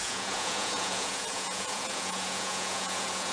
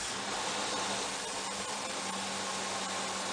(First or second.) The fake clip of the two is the first